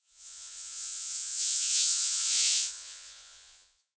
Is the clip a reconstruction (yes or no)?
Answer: yes